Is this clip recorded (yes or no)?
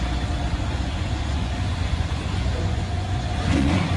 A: no